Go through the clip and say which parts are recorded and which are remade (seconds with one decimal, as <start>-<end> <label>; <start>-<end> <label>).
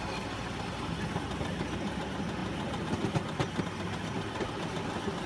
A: 0.0-5.3 recorded